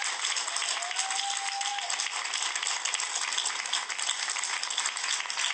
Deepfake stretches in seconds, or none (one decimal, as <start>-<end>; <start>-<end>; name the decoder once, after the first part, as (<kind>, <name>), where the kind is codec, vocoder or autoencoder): none